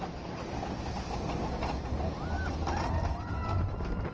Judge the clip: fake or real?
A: real